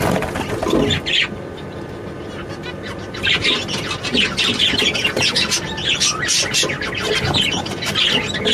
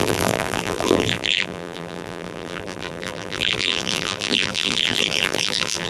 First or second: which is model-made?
second